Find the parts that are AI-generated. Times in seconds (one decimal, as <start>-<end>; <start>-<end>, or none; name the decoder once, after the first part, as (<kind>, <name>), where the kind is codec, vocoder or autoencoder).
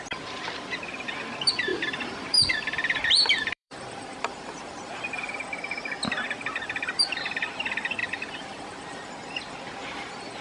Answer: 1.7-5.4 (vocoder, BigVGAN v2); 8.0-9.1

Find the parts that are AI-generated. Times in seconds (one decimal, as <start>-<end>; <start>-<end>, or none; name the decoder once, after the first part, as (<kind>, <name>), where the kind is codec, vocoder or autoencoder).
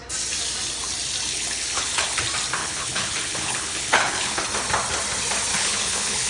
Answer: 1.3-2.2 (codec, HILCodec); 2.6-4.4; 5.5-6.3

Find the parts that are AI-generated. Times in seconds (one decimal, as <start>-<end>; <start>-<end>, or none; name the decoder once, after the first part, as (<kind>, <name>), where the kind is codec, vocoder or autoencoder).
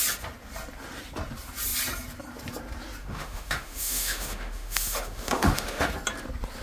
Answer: 3.0-5.9 (autoencoder, DAC-VAE)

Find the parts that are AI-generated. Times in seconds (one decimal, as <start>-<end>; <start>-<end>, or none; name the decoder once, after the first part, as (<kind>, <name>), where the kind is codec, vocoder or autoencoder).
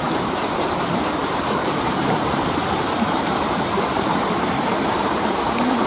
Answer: 0.0-5.9 (vocoder, BigVGAN v2)